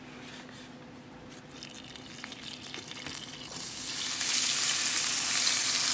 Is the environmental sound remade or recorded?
recorded